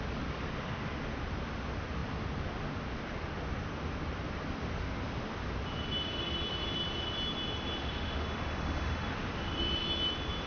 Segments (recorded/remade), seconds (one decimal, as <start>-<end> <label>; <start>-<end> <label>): 0.0-7.9 recorded; 7.9-9.1 remade; 9.1-10.5 recorded